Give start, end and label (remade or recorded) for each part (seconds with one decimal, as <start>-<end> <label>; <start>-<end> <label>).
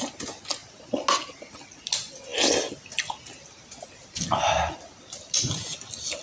0.0-6.2 recorded